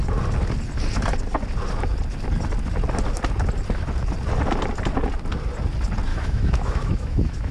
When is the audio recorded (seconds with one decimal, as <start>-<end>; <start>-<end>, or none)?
0.0-6.1